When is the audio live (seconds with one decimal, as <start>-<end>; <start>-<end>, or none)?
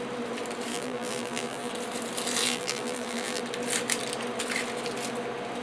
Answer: 0.0-0.7; 1.7-2.4; 3.4-5.6